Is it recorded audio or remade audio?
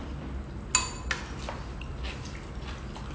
recorded